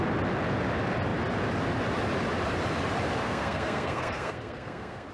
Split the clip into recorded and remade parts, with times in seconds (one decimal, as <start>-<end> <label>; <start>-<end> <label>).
0.0-3.2 recorded; 3.2-5.1 remade